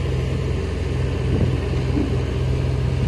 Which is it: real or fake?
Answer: real